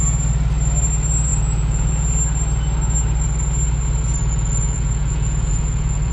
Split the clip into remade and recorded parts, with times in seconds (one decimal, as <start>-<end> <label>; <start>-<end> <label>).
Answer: 0.0-1.3 recorded; 1.3-1.9 remade; 1.9-4.2 recorded; 4.2-6.1 remade